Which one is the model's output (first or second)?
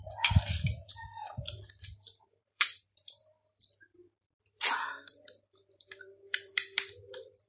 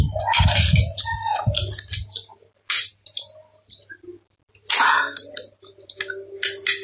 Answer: first